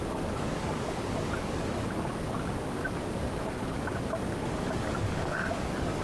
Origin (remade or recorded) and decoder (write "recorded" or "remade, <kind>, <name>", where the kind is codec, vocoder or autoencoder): remade, codec, DAC